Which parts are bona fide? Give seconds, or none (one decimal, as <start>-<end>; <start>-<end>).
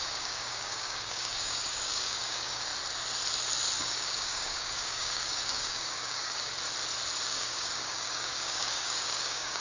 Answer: 2.7-3.8; 6.5-7.2